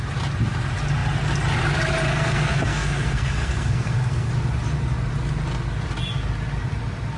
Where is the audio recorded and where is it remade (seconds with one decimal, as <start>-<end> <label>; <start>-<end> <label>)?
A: 0.0-2.1 recorded; 2.1-4.3 remade; 4.3-7.2 recorded